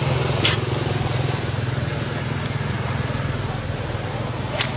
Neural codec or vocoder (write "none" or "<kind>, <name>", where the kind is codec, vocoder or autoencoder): none